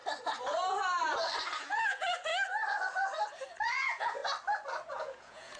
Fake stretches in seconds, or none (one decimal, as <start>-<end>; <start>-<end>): 1.6-2.3; 3.7-4.2; 4.9-5.6